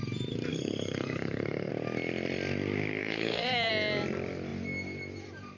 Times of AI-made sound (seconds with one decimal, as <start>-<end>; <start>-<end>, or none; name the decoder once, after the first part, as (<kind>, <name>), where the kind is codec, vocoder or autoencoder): 0.5-1.7 (codec, SNAC); 3.0-3.7